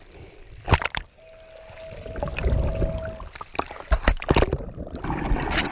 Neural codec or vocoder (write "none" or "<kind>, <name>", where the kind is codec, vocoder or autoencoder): none